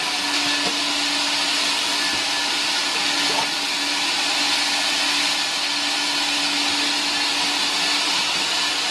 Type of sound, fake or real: real